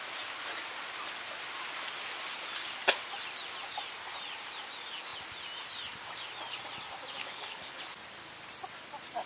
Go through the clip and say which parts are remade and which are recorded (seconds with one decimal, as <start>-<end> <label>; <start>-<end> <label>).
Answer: 0.0-7.2 recorded; 7.2-7.8 remade; 7.8-9.3 recorded